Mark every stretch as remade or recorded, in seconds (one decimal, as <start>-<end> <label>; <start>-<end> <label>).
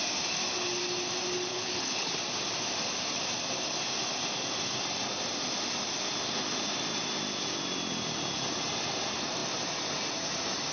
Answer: 0.0-1.5 recorded; 1.5-2.2 remade; 2.2-10.7 recorded